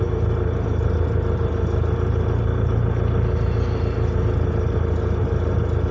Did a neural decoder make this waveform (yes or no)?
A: no